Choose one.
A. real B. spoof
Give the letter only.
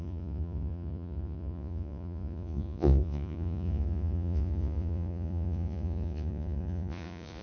B